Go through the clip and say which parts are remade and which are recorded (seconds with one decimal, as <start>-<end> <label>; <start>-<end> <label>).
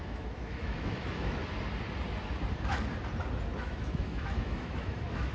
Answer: 0.0-1.4 remade; 1.4-3.6 recorded; 3.6-5.3 remade